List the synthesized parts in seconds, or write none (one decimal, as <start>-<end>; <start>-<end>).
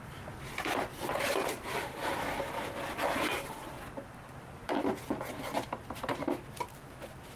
6.2-6.9